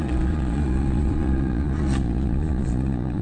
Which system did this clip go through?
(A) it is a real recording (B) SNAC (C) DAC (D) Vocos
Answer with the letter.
D